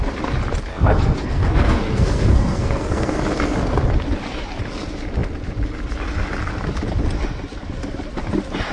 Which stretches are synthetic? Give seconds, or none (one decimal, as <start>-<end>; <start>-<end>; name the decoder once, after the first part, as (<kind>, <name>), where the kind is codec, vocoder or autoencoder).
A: 0.7-3.2 (codec, SNAC)